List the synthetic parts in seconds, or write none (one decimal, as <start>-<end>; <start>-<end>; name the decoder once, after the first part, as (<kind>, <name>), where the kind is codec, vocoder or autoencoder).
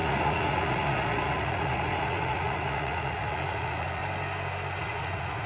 0.0-4.0 (vocoder, Vocos); 4.8-5.5